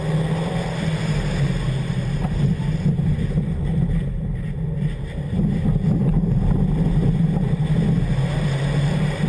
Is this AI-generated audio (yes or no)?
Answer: no